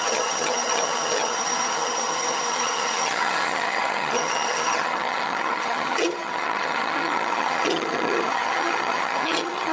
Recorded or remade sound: remade